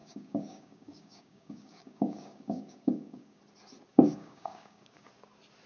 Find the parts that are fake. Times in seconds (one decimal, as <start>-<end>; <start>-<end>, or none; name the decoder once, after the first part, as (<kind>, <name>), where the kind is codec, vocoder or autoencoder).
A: 0.0-3.4 (codec, DAC); 3.9-5.1